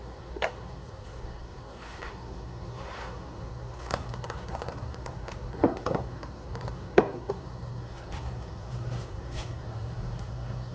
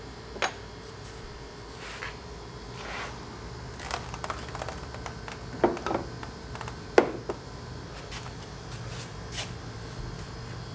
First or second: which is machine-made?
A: first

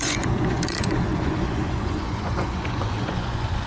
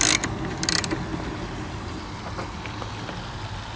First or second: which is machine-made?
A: first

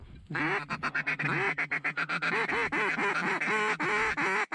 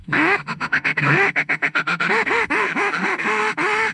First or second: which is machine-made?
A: second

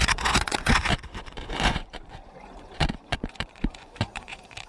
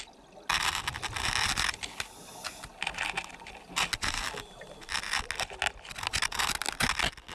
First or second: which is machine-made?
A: first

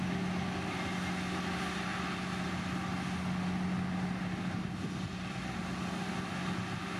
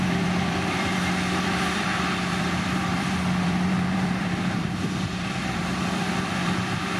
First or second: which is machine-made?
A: second